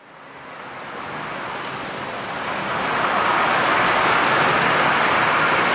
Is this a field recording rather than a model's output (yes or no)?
yes